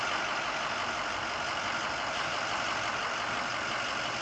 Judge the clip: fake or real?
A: real